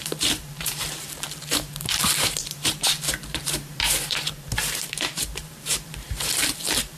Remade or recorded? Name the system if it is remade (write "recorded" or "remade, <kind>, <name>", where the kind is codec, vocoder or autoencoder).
remade, vocoder, BigVGAN v2